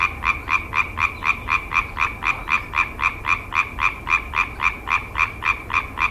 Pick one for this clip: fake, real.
fake